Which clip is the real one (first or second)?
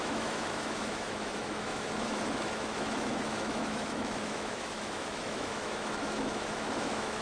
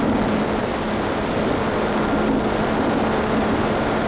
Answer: second